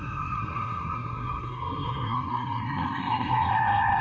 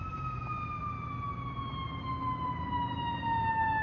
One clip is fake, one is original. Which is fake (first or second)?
first